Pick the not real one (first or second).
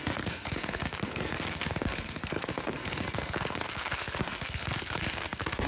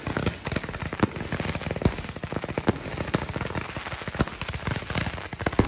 first